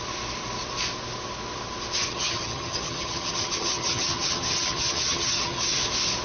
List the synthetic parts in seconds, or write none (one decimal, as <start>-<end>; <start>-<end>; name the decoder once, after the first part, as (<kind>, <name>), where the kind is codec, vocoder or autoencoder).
2.1-5.8 (vocoder, HiFi-GAN)